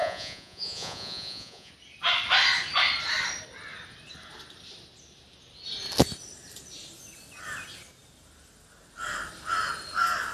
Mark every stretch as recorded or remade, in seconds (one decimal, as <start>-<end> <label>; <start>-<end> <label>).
0.0-1.7 remade; 1.7-10.3 recorded